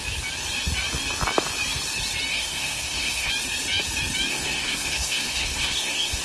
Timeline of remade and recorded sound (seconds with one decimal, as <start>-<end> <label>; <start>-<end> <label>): 0.0-2.3 recorded; 2.3-3.3 remade; 3.3-4.3 recorded; 4.3-6.2 remade